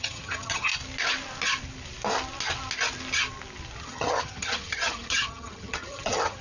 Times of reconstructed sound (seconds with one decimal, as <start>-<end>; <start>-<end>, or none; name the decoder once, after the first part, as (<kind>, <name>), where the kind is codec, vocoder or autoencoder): 0.0-0.7 (vocoder, HiFi-GAN); 3.8-6.4